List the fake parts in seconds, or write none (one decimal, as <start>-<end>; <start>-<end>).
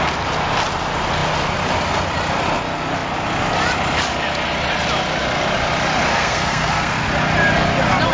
6.1-7.1